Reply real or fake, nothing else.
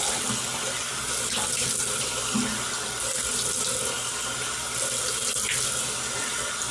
real